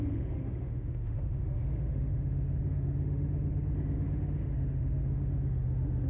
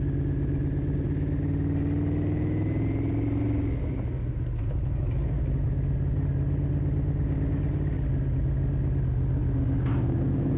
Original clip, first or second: second